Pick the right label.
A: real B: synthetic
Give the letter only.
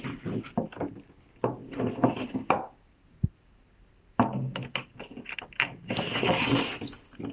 A